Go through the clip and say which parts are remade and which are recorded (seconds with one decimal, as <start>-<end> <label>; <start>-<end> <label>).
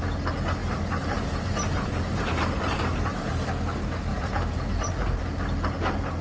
0.0-0.6 recorded; 0.6-3.3 remade; 3.3-4.1 recorded; 4.1-5.2 remade; 5.2-6.2 recorded